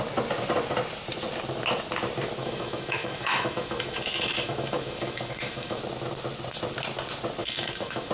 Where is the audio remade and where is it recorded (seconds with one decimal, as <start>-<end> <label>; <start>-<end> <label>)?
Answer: 0.0-2.4 recorded; 2.4-5.8 remade; 5.8-7.4 recorded; 7.4-8.1 remade